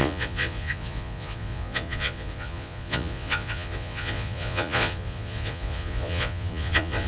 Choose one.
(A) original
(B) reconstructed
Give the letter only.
B